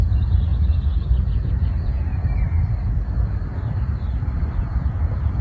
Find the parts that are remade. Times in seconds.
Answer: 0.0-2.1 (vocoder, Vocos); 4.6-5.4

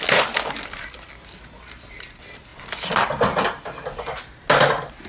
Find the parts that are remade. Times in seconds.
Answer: none

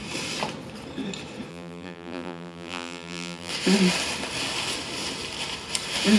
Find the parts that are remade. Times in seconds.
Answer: 1.5-3.5 (vocoder, BigVGAN v2)

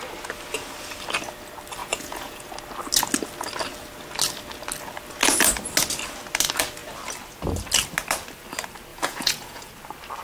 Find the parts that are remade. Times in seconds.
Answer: 1.8-2.5 (vocoder, Vocos); 8.9-9.7

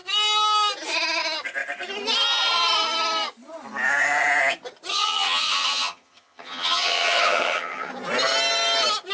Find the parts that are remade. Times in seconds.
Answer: 4.9-7.9 (vocoder, HiFi-GAN)

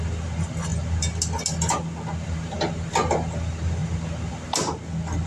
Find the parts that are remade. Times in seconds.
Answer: none

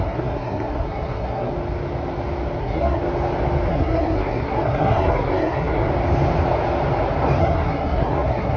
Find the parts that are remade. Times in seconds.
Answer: 0.0-1.5 (codec, SNAC); 2.6-3.0; 3.7-5.9; 7.4-8.6